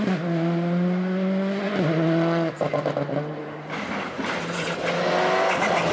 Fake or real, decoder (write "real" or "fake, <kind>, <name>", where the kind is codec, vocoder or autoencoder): real